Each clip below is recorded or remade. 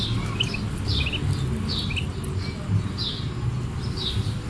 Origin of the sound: recorded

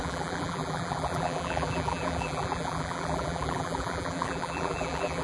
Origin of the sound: remade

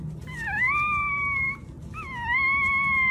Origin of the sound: recorded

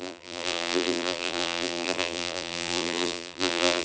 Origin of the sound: remade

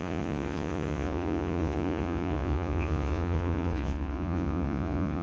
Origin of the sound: remade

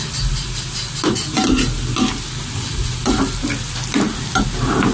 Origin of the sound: recorded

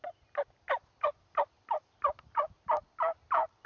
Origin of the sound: recorded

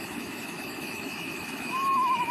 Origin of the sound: remade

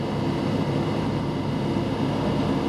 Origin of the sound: recorded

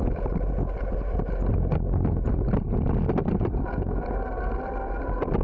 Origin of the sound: recorded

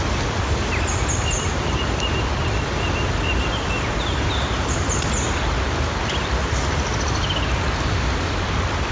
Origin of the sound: recorded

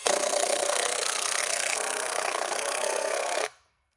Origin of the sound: remade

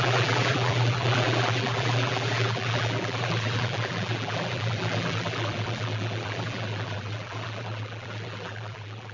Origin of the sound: remade